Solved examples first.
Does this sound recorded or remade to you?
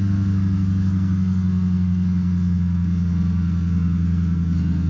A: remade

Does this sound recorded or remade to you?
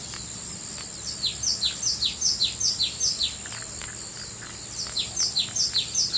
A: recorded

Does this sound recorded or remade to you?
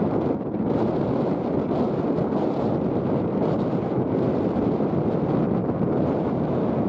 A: recorded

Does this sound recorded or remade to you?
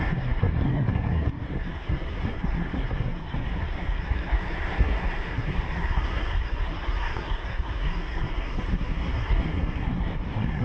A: remade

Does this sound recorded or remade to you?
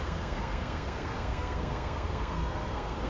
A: remade